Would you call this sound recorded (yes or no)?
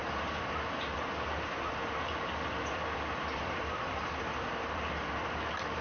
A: no